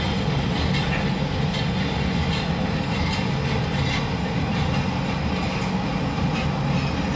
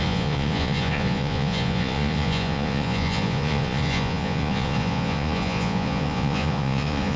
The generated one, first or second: second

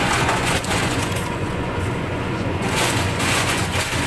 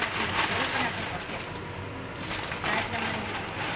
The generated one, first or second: first